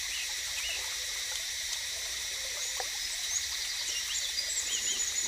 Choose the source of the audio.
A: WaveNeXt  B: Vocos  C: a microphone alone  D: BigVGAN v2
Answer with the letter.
D